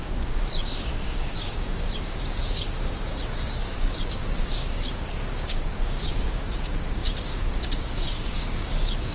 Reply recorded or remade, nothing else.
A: remade